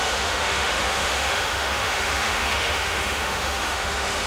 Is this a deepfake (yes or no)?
yes